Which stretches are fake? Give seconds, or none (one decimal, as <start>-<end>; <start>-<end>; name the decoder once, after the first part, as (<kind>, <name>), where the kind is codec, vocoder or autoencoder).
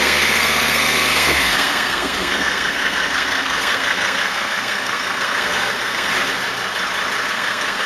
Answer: 0.0-6.1 (codec, SNAC); 7.3-7.9